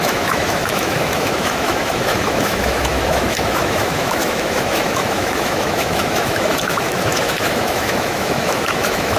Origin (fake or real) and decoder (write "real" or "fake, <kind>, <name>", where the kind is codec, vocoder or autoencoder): fake, autoencoder, DAC-VAE